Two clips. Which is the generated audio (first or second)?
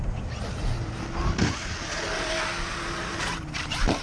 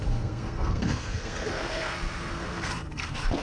second